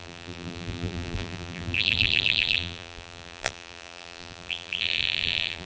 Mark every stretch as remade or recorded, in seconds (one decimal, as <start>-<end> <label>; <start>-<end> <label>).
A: 0.0-5.7 remade